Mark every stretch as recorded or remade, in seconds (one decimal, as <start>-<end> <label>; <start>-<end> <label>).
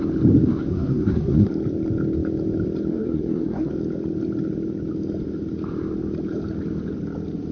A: 0.0-0.7 recorded; 0.7-1.5 remade; 1.5-2.9 recorded; 2.9-3.7 remade; 3.7-7.5 recorded